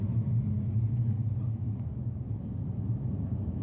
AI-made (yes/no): no